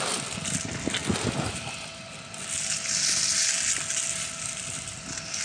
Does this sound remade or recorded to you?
recorded